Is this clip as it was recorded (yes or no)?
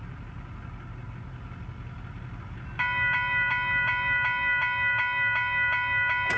yes